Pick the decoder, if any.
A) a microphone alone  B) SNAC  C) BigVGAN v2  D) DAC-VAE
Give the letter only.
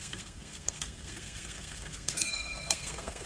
B